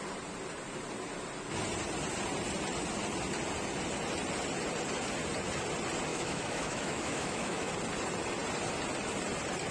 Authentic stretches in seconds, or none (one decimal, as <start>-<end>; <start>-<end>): 0.0-6.1; 7.7-9.7